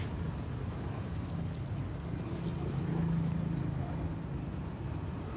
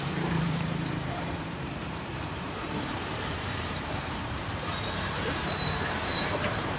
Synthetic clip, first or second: second